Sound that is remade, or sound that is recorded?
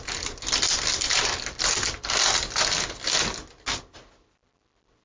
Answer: recorded